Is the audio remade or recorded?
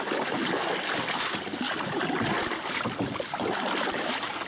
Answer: recorded